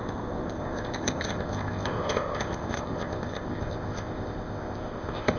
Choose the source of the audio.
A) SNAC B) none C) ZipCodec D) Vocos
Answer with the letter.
C